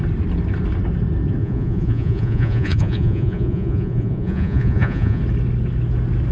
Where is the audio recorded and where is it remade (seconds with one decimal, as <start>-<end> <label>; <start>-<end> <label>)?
0.0-1.4 recorded; 1.4-5.2 remade; 5.2-6.3 recorded